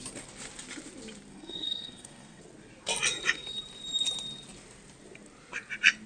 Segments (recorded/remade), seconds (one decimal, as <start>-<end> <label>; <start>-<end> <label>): 0.0-1.3 recorded; 1.3-2.4 remade; 2.4-6.1 recorded

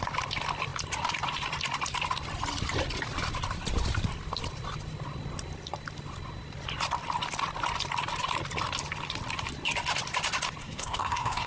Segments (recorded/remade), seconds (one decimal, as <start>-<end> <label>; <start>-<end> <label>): 0.0-10.6 recorded; 10.6-11.5 remade

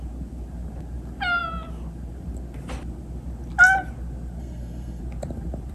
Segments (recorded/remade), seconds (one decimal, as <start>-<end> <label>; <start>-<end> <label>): 0.0-4.4 recorded; 4.4-5.0 remade; 5.0-5.7 recorded

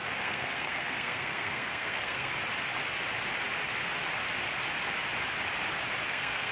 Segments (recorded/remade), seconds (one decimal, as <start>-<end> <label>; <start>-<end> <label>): 0.0-2.3 remade; 2.3-6.1 recorded; 6.1-6.5 remade

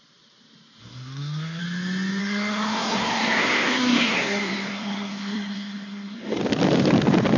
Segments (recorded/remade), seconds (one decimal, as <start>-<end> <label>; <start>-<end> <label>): 0.0-0.8 recorded; 0.8-1.6 remade; 1.6-2.2 recorded; 2.2-6.4 remade; 6.4-7.4 recorded

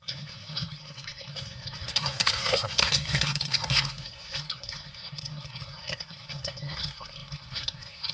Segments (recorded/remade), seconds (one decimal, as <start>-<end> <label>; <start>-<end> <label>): 0.0-8.1 remade